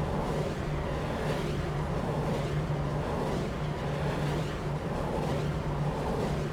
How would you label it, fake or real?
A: real